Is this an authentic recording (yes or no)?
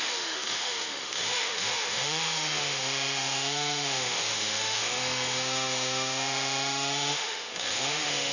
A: no